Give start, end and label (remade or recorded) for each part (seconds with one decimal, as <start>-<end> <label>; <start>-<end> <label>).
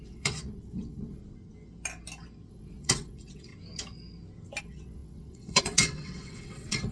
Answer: 0.0-1.2 remade; 1.2-2.5 recorded; 2.5-3.5 remade; 3.5-4.6 recorded; 4.6-6.9 remade